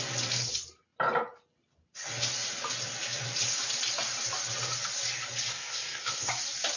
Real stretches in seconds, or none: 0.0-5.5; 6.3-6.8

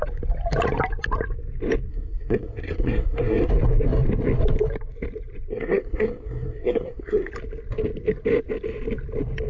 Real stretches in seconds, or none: 0.0-1.9; 3.5-5.5; 7.3-9.5

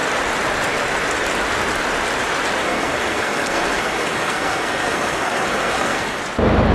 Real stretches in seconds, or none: 0.0-2.6; 6.2-6.7

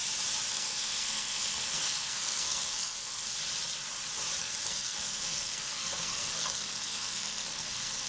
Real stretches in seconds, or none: 0.0-0.5; 3.3-4.4